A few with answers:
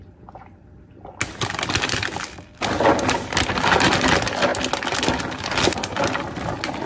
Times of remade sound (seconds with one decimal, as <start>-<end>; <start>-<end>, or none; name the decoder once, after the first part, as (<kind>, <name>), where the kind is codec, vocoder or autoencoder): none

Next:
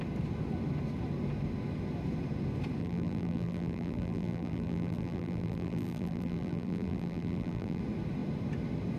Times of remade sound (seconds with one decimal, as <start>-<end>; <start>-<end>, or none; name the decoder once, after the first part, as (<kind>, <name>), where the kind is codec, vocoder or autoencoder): 2.8-7.8 (vocoder, BigVGAN v2)

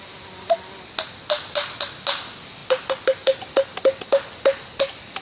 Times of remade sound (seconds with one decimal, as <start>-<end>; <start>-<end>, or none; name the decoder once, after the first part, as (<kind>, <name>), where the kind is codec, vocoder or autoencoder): none

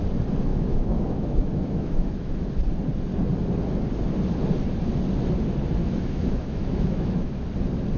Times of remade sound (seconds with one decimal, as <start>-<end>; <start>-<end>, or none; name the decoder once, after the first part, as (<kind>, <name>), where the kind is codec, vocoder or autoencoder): 0.5-2.5 (autoencoder, DAC-VAE); 5.8-7.4

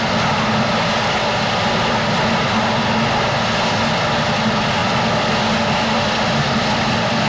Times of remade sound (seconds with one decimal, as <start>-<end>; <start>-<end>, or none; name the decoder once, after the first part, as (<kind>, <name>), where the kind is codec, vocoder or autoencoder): none

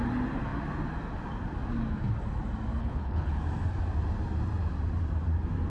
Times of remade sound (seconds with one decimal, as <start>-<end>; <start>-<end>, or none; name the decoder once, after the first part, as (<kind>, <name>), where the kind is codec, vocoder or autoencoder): 2.8-3.4 (codec, HILCodec)

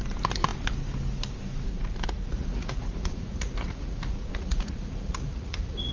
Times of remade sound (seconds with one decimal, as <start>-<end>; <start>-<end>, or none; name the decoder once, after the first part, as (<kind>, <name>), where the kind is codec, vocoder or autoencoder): 2.3-5.9 (vocoder, Vocos)